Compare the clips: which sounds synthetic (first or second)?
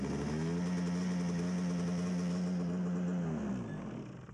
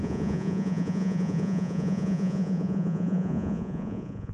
second